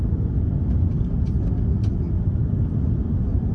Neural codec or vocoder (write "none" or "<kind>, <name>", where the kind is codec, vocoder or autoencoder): none